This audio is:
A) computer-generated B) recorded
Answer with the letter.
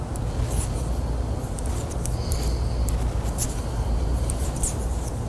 B